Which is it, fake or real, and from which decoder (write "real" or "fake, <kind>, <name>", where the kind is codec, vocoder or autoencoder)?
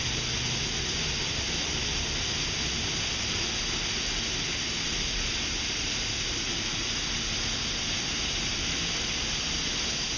real